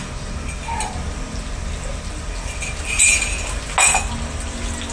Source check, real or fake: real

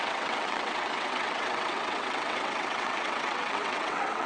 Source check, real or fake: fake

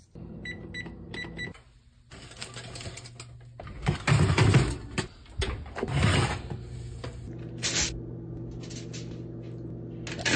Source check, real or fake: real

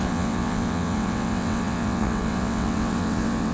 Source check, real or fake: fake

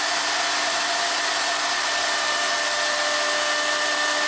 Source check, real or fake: real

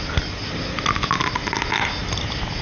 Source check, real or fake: real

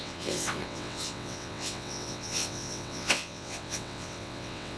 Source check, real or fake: fake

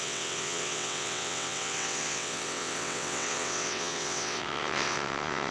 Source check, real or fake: fake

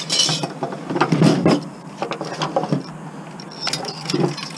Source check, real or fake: real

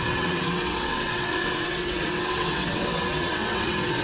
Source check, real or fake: fake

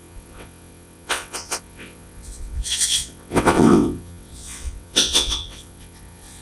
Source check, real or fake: fake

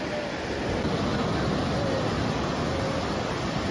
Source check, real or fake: real